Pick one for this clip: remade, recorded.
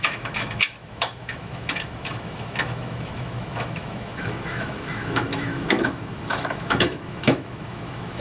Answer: remade